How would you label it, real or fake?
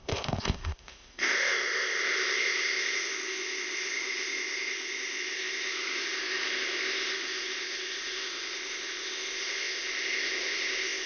fake